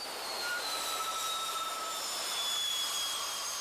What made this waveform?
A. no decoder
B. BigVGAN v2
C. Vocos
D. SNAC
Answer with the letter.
B